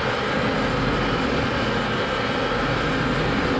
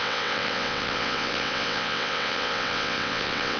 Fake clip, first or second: second